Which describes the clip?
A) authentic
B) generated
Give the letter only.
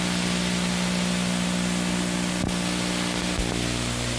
A